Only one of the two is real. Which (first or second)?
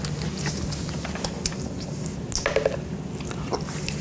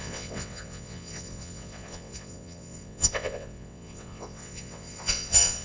first